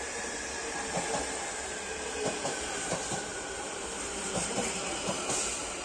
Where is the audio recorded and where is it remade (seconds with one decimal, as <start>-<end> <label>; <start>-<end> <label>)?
0.0-0.6 remade; 0.6-1.7 recorded; 1.7-5.8 remade